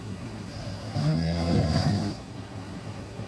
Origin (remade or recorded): remade